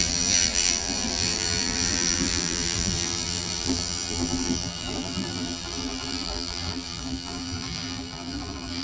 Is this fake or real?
fake